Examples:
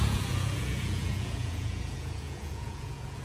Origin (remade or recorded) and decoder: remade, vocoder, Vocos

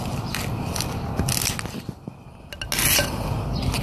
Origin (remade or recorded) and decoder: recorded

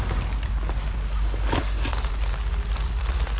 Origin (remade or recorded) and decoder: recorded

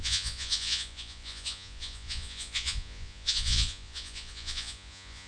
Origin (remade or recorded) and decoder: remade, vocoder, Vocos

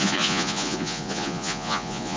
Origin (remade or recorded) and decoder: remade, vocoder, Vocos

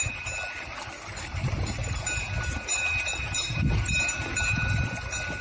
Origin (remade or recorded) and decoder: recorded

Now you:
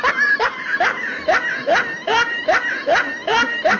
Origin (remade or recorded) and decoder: recorded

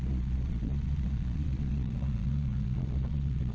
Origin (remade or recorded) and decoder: remade, vocoder, Vocos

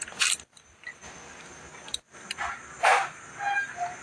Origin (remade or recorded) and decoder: recorded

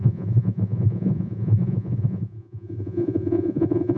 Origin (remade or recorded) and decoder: remade, vocoder, Vocos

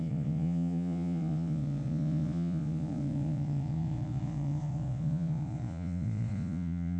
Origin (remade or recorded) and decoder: remade, vocoder, Vocos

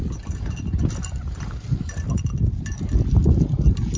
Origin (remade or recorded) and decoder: recorded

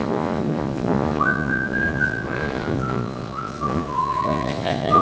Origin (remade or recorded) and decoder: remade, vocoder, Vocos